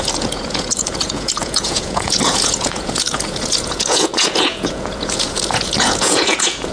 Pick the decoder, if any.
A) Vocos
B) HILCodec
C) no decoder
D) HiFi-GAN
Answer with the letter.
A